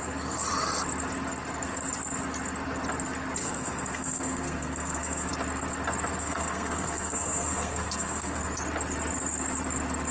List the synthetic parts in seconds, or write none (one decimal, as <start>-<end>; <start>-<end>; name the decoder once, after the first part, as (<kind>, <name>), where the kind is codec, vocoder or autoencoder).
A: 3.4-5.3 (codec, SNAC); 6.2-8.4